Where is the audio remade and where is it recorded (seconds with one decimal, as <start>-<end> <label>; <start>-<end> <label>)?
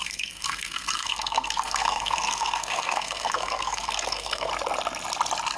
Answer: 0.0-4.5 remade; 4.5-5.6 recorded